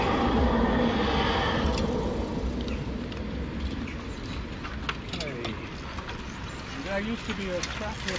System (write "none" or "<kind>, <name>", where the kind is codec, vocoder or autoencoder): none